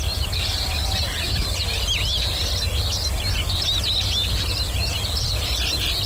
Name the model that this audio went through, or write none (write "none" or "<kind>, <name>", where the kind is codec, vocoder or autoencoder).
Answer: none